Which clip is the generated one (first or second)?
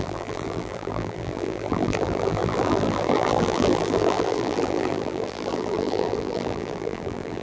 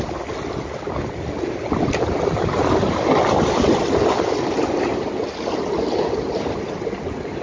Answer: first